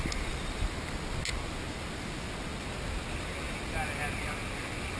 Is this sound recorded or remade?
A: recorded